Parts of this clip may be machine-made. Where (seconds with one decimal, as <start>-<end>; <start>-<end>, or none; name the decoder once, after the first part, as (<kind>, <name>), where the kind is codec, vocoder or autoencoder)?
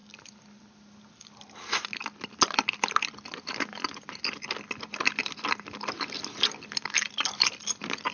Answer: none